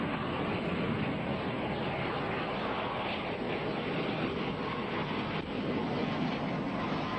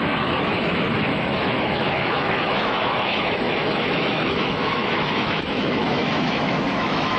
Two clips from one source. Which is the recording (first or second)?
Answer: first